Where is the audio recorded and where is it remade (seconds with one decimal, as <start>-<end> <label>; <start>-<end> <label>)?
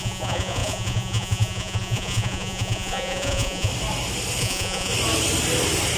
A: 0.0-3.7 remade; 3.7-4.4 recorded; 4.4-4.9 remade; 4.9-6.0 recorded